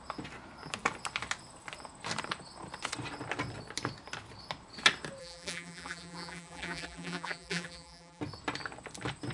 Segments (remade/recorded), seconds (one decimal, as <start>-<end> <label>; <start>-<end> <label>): 0.0-5.2 recorded; 5.2-8.2 remade; 8.2-9.3 recorded